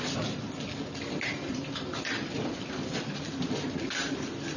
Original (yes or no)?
yes